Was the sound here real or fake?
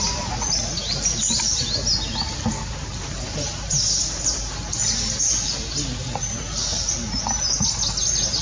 real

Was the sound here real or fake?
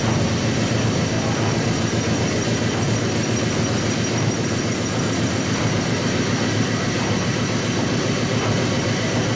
real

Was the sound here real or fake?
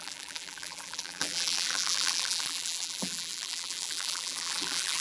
fake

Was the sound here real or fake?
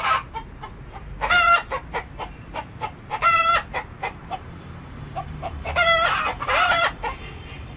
fake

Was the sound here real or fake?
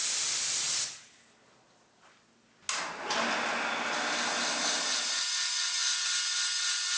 real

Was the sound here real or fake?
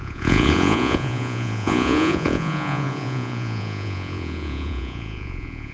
fake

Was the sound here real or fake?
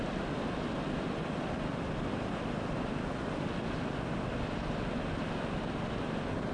real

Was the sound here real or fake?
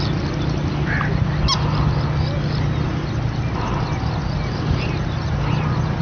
real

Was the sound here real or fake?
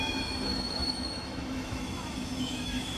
fake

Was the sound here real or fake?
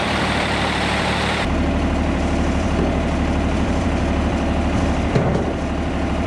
fake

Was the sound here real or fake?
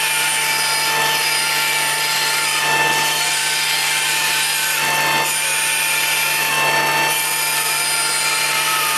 real